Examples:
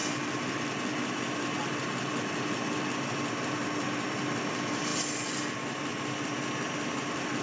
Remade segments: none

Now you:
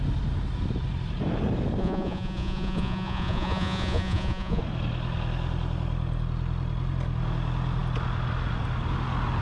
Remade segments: 1.8-4.6 (vocoder, Vocos)

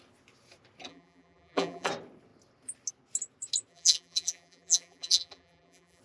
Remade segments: 0.9-1.9 (vocoder, BigVGAN v2); 3.7-6.0

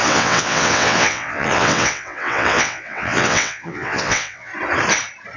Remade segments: 0.0-4.5 (vocoder, WaveNeXt)